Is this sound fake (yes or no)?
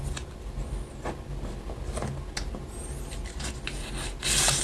no